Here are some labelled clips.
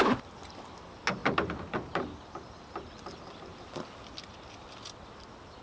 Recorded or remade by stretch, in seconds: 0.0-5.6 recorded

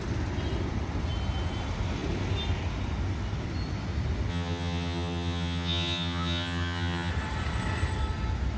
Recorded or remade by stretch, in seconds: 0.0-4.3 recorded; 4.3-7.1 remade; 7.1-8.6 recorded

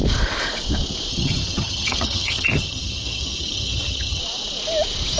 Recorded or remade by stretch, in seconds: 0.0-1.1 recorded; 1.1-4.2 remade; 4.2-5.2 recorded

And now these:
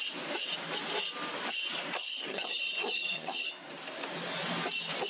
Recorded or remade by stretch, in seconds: 0.0-2.0 recorded; 2.0-3.5 remade; 3.5-5.1 recorded

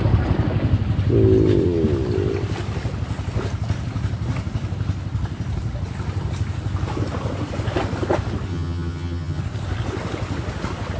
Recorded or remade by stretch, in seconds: 0.0-8.5 recorded; 8.5-9.4 remade; 9.4-11.0 recorded